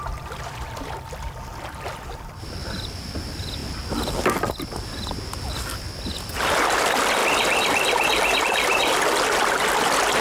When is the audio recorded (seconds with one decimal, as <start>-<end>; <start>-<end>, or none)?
0.0-10.2

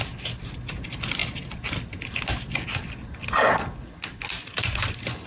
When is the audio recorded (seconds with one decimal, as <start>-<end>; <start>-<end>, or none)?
0.0-5.3